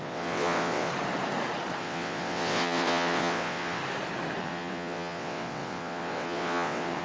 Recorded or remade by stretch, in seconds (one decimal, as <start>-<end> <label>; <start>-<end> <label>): 0.0-0.9 remade; 0.9-1.8 recorded; 1.8-3.8 remade; 3.8-4.4 recorded; 4.4-7.0 remade